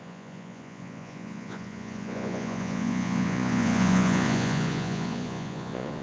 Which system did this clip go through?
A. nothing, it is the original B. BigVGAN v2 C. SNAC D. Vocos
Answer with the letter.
D